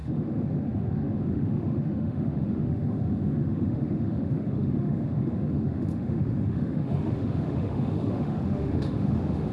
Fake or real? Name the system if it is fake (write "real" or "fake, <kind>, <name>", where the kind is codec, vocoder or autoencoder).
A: fake, autoencoder, DAC-VAE